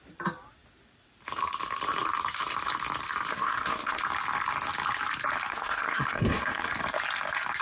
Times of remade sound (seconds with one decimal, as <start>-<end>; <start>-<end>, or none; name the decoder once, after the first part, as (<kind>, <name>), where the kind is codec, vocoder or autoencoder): 3.3-4.0 (codec, SNAC); 5.5-6.7